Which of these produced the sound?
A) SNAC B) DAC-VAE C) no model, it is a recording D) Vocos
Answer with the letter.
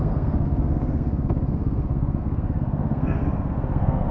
A